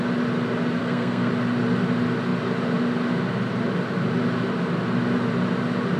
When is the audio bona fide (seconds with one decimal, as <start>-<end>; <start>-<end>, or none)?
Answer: 0.0-0.8; 1.3-6.0